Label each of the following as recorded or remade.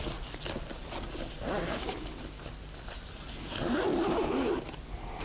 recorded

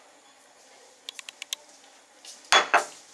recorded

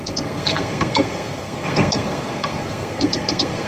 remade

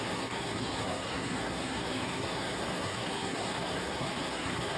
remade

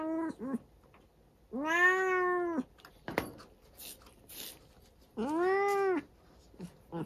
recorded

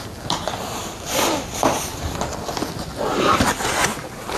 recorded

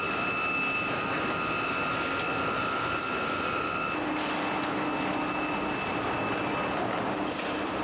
recorded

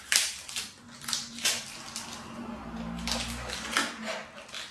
recorded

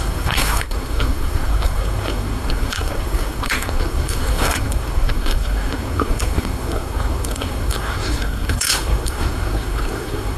remade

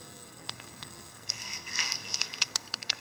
remade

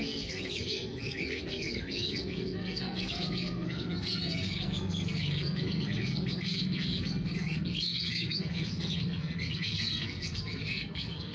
remade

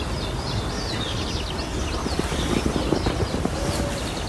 recorded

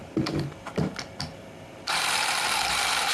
recorded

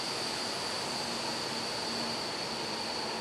recorded